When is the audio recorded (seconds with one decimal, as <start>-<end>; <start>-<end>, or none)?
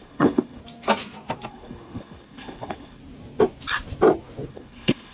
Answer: 0.6-1.5; 3.0-4.5